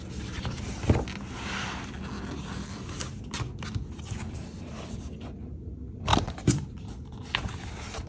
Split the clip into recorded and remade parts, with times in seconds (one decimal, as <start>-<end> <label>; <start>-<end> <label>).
0.0-6.1 recorded; 6.1-6.7 remade; 6.7-8.1 recorded